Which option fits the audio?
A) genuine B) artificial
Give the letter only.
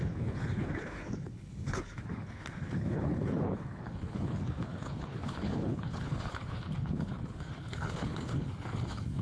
B